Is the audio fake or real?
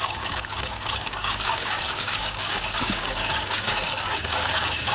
fake